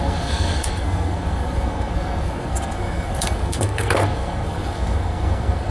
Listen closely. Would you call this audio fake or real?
fake